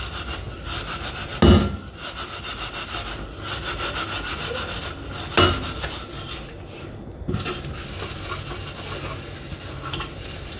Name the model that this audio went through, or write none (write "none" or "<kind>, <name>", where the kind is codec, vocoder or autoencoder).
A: none